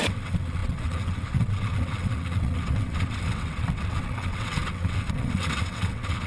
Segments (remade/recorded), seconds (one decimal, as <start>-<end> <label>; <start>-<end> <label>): 0.0-6.3 remade